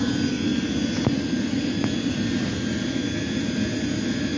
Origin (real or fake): real